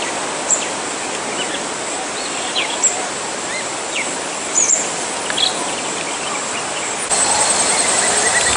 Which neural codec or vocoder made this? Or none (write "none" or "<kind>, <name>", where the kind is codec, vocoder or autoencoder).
none